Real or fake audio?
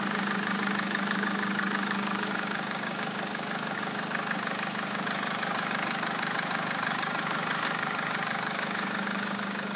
fake